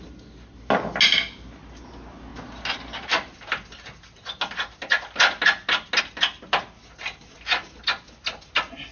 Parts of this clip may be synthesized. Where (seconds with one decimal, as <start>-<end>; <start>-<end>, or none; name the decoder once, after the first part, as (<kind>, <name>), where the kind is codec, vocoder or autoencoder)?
none